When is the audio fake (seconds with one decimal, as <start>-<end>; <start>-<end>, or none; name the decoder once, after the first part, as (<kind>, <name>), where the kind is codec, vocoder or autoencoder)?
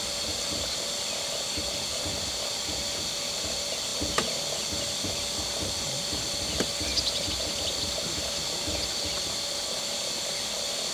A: none